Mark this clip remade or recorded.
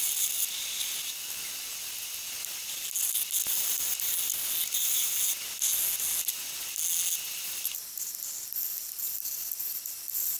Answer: recorded